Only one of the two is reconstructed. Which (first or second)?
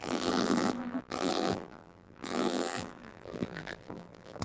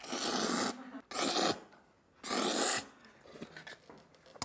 first